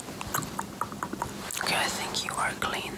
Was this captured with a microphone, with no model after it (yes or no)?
yes